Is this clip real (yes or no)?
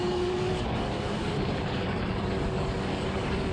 no